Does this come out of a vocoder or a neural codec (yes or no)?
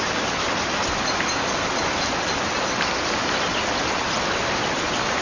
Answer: no